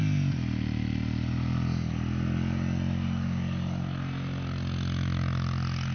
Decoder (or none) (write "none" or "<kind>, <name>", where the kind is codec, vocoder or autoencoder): none